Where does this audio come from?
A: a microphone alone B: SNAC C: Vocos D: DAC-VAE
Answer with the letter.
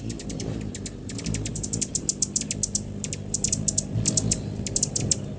A